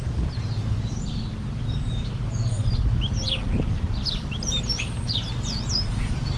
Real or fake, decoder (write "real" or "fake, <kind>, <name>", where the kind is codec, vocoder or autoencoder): fake, vocoder, BigVGAN v2